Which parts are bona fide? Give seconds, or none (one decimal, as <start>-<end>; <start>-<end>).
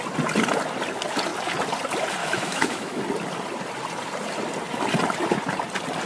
0.0-2.2; 3.0-6.1